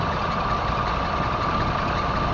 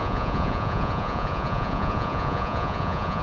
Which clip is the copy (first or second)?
second